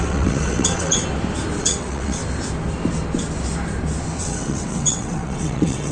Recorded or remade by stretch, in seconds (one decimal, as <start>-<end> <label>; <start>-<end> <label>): 0.0-1.0 remade; 1.0-1.6 recorded; 1.6-2.2 remade; 2.2-4.2 recorded; 4.2-5.9 remade